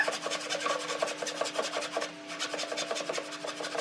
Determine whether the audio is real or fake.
real